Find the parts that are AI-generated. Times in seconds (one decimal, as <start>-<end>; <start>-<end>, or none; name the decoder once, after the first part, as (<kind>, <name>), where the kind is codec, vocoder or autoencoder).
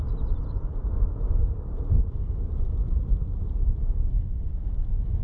1.4-4.5 (vocoder, BigVGAN v2)